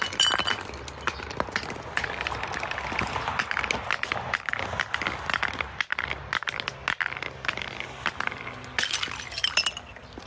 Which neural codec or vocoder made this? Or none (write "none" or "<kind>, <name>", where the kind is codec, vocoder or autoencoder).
none